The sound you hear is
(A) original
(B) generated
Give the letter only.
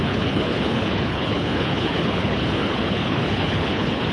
B